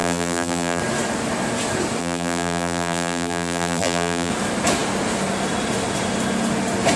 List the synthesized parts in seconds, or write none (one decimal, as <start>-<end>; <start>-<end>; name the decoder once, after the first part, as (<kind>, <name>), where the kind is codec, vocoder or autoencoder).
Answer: 0.0-0.8 (vocoder, BigVGAN v2); 2.0-4.3